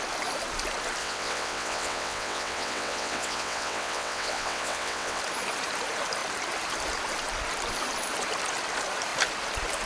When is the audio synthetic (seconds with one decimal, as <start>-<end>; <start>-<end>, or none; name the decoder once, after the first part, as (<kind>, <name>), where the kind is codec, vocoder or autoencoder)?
1.0-5.2 (vocoder, WaveNeXt)